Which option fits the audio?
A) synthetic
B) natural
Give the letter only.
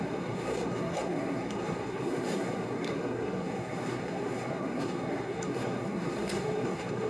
A